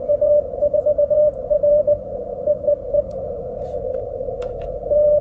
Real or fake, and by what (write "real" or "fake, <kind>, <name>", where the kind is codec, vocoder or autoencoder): fake, vocoder, Vocos